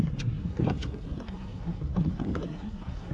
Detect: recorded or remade remade